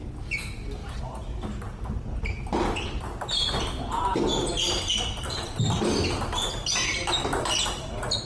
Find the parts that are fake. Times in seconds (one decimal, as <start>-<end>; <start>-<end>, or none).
none